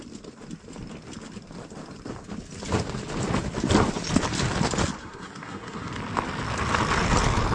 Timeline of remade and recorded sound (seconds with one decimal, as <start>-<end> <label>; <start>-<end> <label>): 0.0-5.0 recorded; 5.0-5.9 remade; 5.9-7.5 recorded